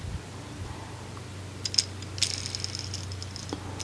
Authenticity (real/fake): real